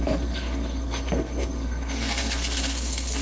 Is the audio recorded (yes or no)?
no